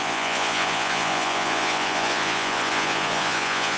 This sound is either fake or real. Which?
fake